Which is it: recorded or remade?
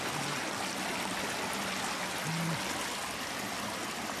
recorded